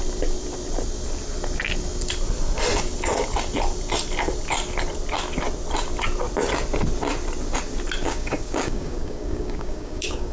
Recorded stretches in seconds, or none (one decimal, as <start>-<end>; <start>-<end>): 0.0-8.0